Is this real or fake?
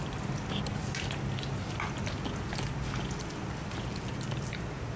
real